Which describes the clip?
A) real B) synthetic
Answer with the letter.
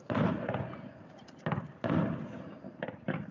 A